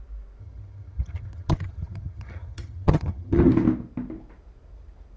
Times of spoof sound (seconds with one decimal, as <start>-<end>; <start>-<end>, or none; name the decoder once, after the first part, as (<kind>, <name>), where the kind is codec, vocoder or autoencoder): 0.4-3.5 (vocoder, HiFi-GAN)